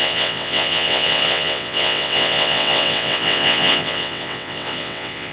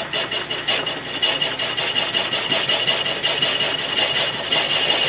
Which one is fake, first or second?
first